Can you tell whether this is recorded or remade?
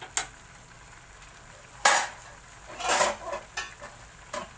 recorded